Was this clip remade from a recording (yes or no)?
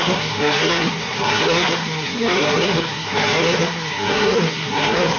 yes